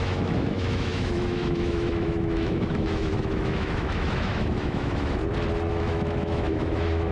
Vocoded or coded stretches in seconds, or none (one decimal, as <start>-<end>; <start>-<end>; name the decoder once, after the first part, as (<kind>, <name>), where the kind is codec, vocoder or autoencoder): 0.0-5.2 (autoencoder, DAC-VAE); 5.7-7.1